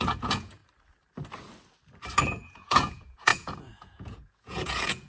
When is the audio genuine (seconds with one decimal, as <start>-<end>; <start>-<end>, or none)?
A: 0.6-2.2